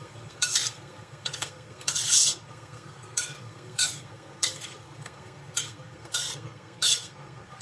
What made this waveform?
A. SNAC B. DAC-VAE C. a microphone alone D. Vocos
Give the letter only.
A